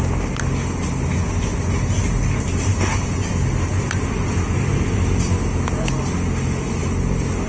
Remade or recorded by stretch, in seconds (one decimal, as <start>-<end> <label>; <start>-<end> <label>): 0.0-7.5 recorded